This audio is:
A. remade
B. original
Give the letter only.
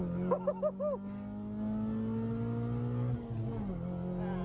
B